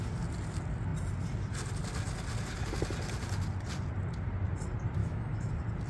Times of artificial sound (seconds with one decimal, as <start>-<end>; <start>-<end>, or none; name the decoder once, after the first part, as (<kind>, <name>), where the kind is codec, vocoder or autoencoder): 5.0-5.5 (autoencoder, DAC-VAE)